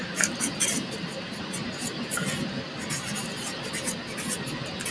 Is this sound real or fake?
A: real